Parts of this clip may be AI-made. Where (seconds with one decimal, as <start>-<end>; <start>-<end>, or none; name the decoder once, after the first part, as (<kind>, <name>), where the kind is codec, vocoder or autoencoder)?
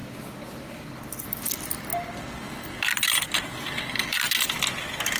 none